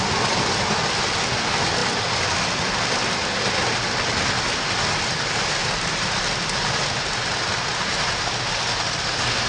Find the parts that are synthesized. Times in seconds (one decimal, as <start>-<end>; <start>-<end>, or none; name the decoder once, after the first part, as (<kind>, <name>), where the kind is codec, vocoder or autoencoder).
5.6-6.2 (vocoder, BigVGAN v2)